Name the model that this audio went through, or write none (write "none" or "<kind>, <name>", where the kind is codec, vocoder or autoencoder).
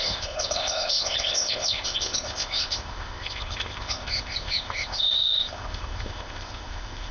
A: codec, ZipCodec